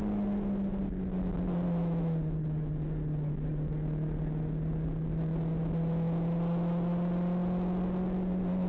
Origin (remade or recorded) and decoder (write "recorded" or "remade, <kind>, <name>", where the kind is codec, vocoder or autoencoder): recorded